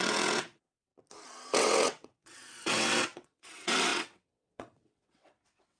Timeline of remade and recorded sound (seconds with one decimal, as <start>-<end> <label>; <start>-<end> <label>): 0.0-0.9 remade; 0.9-1.6 recorded; 1.6-5.8 remade